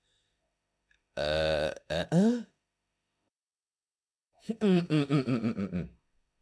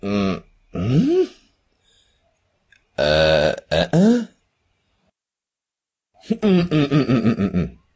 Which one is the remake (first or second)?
first